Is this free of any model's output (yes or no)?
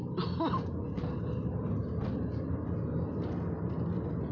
yes